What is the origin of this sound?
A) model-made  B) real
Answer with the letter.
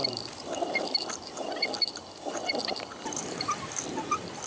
A